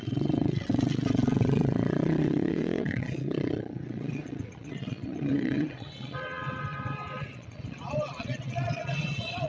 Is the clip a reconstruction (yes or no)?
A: yes